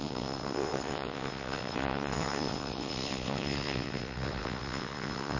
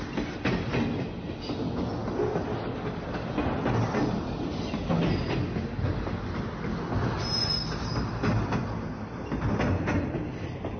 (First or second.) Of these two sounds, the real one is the second